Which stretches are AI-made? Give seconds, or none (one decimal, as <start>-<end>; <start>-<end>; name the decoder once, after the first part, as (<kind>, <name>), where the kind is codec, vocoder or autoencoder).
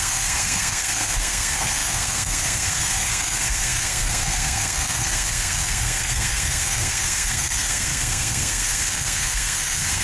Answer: 0.0-10.0 (codec, SNAC)